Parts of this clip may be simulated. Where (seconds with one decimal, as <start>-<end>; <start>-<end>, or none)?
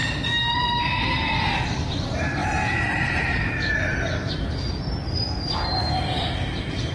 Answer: 1.9-6.9